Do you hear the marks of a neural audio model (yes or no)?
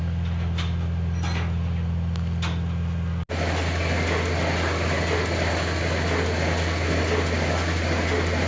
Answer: no